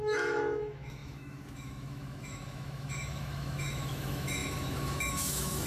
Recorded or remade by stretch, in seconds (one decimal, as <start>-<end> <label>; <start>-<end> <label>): 0.0-5.7 remade